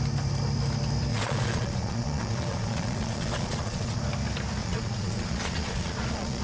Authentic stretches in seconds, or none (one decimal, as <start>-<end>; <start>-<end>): 0.0-1.1; 4.0-4.6